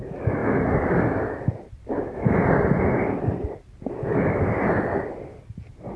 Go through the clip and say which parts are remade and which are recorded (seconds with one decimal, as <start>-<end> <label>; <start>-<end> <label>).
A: 0.0-6.0 recorded

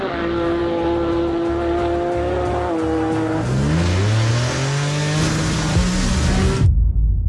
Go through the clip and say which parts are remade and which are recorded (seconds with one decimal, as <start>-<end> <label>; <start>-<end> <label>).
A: 0.0-7.3 recorded

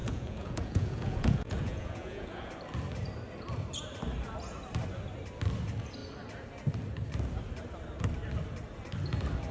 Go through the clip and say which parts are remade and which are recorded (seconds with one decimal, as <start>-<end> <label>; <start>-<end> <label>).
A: 0.0-2.5 remade; 2.5-9.5 recorded

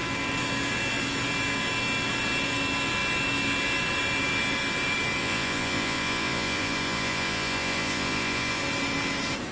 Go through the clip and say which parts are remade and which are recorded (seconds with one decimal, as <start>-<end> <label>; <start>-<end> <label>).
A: 0.0-5.2 recorded; 5.2-8.6 remade; 8.6-9.5 recorded